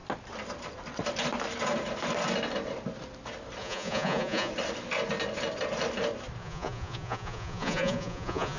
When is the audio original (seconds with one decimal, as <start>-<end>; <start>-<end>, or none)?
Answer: 0.0-3.6; 4.5-6.4